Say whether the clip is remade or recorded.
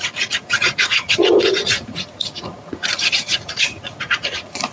remade